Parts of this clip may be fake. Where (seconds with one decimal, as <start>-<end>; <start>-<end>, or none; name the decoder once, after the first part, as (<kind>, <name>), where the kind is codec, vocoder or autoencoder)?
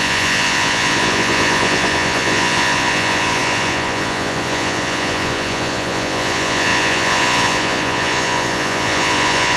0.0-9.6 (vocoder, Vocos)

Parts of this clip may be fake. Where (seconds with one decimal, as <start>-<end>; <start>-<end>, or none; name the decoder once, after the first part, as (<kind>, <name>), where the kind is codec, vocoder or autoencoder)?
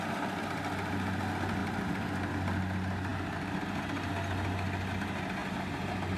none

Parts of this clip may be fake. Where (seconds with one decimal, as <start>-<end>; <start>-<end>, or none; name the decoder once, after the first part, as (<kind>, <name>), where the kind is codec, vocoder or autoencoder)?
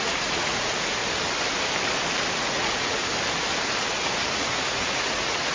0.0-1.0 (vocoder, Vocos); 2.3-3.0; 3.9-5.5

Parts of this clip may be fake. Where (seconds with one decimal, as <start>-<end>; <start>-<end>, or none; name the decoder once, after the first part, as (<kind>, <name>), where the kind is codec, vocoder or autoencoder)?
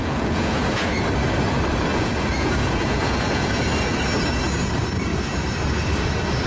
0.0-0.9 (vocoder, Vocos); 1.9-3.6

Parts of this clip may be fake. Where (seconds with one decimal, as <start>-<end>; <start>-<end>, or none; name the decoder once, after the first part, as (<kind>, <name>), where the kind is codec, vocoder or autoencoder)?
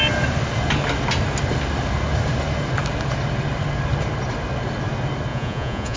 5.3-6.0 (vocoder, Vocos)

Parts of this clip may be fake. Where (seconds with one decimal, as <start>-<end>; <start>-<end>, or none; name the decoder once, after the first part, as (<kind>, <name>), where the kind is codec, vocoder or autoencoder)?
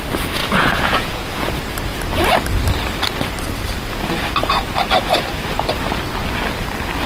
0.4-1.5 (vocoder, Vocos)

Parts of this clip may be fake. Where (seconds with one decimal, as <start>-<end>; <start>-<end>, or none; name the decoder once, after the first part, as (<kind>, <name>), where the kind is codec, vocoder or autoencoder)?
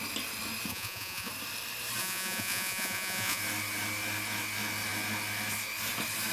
0.7-1.3 (vocoder, Vocos); 2.0-3.4